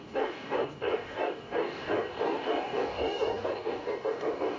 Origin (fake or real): fake